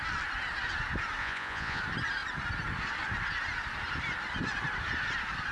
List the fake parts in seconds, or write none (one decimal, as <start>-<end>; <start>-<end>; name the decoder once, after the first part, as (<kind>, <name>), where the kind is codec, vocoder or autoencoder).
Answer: 1.2-1.8 (vocoder, Vocos)